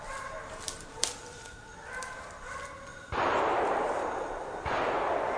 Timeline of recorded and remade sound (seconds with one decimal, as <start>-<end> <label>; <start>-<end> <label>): 0.0-2.9 recorded; 2.9-5.0 remade; 5.0-5.4 recorded